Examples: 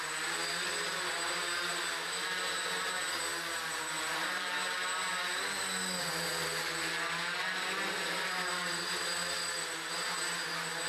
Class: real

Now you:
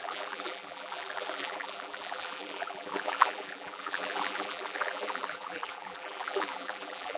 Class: fake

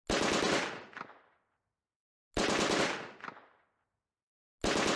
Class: real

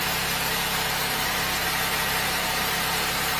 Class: fake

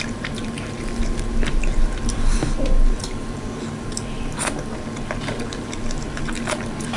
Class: fake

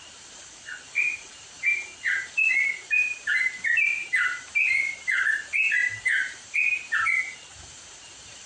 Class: fake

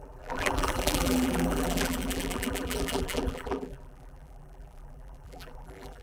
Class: fake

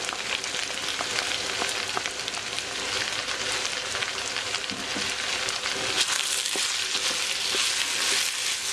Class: real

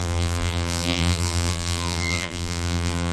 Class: fake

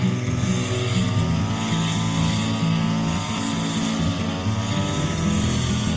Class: real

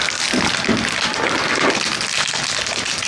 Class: real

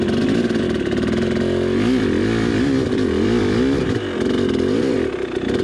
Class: real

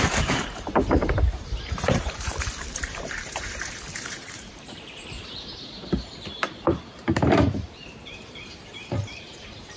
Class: fake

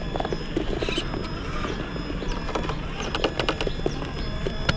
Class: real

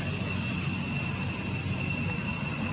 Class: real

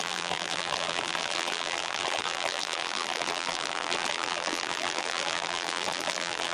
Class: fake